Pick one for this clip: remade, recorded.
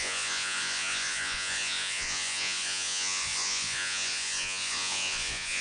remade